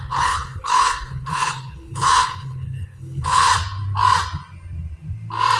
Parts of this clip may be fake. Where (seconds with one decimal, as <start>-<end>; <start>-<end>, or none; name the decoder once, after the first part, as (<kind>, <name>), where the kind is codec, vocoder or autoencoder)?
0.0-3.5 (codec, HILCodec)